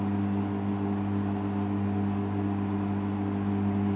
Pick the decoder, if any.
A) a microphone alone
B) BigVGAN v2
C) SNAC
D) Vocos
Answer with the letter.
A